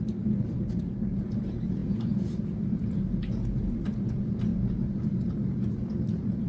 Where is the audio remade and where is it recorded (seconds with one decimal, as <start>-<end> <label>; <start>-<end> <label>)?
0.0-1.8 recorded; 1.8-4.1 remade; 4.1-6.5 recorded